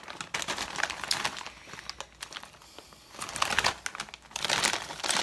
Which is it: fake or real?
real